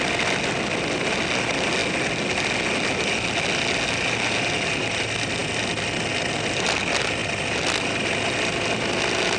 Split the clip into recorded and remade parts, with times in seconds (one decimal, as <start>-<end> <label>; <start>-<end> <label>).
0.0-9.4 recorded